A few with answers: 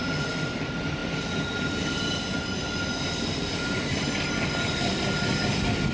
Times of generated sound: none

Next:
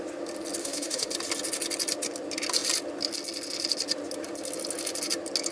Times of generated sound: 0.6-1.1 (autoencoder, DAC-VAE)

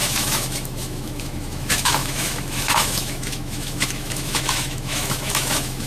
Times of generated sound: 0.0-5.9 (autoencoder, DAC-VAE)

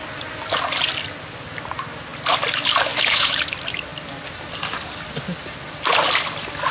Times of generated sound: 2.9-3.4 (autoencoder, DAC-VAE)